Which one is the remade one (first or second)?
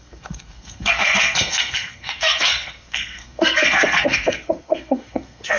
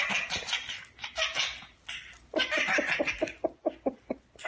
first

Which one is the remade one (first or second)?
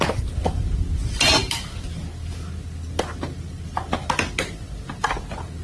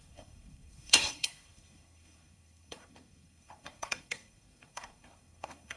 second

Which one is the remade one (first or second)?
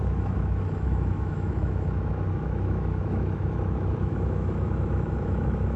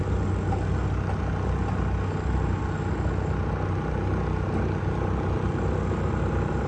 first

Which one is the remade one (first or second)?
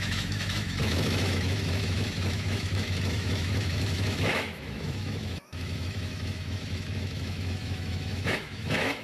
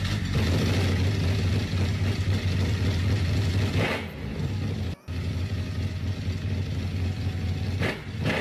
first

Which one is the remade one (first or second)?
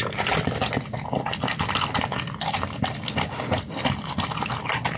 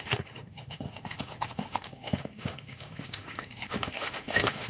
second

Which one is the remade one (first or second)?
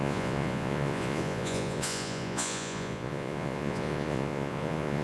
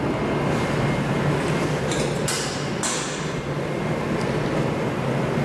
first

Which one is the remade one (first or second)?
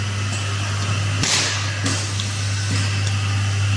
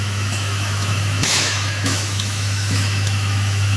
second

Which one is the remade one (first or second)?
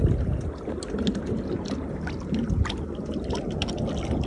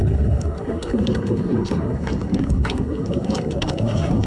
second